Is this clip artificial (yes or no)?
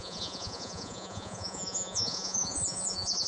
yes